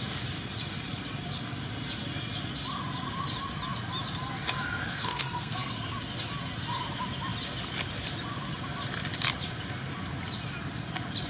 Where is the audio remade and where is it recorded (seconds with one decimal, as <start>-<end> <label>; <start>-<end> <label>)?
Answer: 0.0-4.9 recorded; 4.9-5.7 remade; 5.7-11.3 recorded